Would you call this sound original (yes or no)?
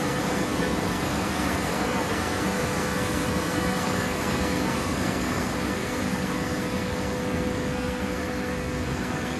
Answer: no